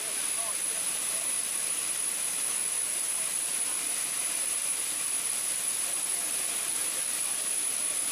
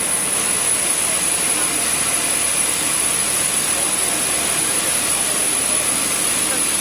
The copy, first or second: first